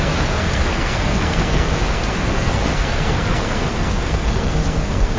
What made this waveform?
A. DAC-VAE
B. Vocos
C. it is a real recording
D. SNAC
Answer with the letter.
D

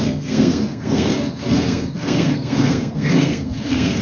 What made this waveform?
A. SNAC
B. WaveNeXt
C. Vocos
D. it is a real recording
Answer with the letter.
A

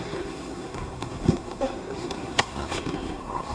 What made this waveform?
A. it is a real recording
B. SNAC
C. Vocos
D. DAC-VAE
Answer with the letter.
B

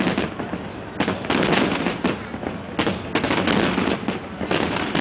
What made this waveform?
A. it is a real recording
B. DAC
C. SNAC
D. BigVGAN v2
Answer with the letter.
A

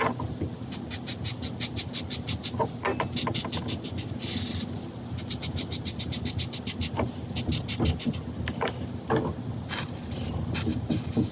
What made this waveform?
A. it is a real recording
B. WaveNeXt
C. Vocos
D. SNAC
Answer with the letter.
A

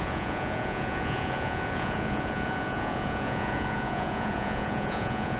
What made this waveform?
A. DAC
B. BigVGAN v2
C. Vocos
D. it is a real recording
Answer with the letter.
C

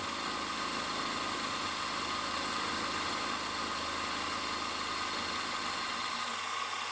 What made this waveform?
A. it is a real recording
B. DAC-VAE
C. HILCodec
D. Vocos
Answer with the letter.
A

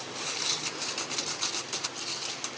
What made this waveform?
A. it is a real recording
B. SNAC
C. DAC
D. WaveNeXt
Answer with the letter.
A